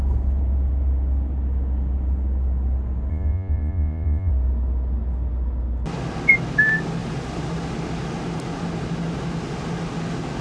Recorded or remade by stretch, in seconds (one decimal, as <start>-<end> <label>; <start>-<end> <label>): 0.0-3.1 recorded; 3.1-4.3 remade; 4.3-10.4 recorded